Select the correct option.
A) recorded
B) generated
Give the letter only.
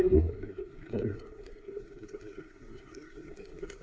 B